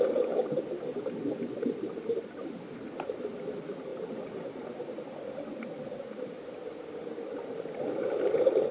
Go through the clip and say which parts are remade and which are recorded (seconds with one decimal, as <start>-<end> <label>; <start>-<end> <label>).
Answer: 0.0-8.7 recorded